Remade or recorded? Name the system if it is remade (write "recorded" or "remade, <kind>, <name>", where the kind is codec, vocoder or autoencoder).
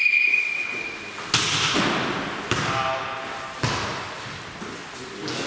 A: recorded